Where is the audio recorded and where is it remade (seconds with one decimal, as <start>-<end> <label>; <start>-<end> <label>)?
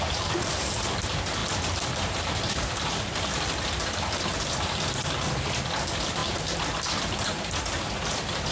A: 0.0-1.4 recorded; 1.4-3.1 remade; 3.1-4.3 recorded; 4.3-5.0 remade; 5.0-8.5 recorded